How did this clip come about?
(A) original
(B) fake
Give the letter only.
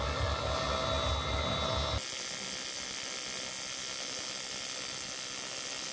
A